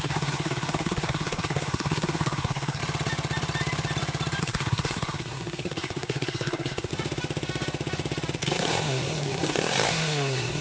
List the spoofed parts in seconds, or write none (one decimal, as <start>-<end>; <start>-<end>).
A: 0.0-2.8; 4.4-6.9; 8.4-10.6